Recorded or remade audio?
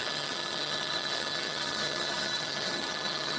remade